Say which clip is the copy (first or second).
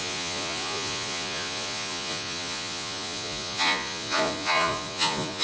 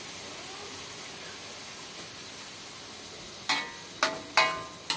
first